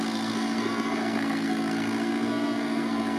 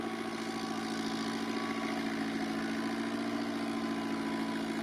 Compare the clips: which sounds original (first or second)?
second